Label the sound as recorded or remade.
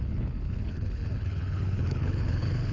remade